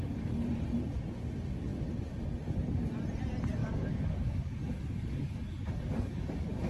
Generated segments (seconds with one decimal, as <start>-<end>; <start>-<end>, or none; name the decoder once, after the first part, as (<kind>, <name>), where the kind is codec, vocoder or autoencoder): 3.6-6.7 (codec, DAC)